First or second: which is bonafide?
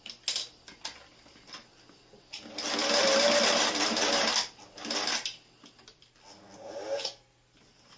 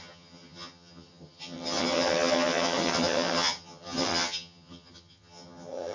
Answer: first